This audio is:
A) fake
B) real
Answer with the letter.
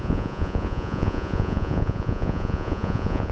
A